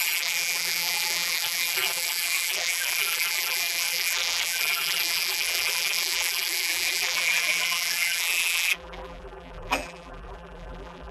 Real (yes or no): no